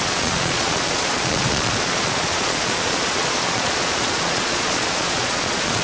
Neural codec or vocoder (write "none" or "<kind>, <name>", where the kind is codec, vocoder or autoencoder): vocoder, Vocos